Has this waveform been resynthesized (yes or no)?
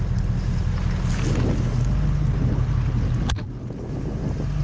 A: no